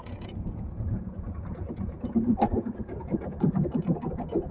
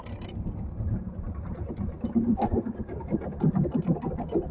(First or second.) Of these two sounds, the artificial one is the first